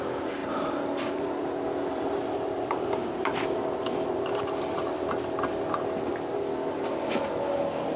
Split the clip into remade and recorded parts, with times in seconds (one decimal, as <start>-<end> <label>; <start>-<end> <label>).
0.0-0.4 recorded; 0.4-5.1 remade; 5.1-6.1 recorded; 6.1-7.3 remade; 7.3-8.0 recorded